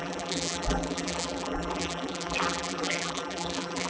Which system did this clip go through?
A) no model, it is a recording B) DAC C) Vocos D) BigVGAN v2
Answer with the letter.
D